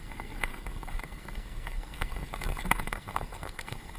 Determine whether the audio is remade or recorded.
remade